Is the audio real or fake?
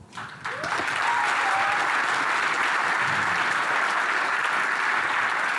real